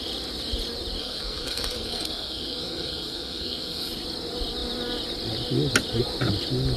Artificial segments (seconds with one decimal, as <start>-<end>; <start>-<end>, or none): 1.0-3.9